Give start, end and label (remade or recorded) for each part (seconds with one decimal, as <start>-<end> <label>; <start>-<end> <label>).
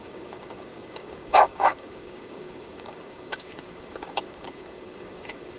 0.0-5.6 remade